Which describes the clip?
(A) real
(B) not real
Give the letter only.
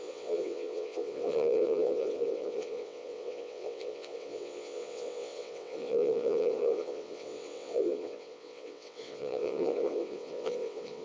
B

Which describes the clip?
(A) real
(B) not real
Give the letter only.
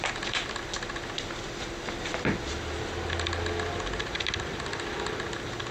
A